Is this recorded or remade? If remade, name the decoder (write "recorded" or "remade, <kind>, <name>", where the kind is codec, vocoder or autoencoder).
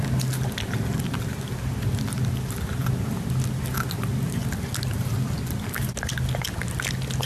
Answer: recorded